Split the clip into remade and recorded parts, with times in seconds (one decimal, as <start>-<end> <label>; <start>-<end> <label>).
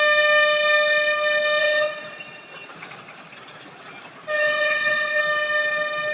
0.0-1.6 recorded; 1.6-2.7 remade; 2.7-4.4 recorded; 4.4-5.2 remade; 5.2-6.1 recorded